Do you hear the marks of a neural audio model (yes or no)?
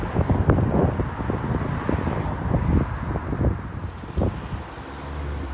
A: no